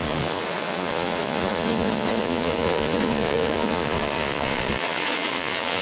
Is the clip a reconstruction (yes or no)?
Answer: yes